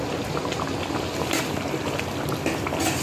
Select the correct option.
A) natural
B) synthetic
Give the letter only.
A